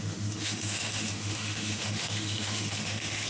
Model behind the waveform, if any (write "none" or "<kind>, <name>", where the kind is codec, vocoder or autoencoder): autoencoder, DAC-VAE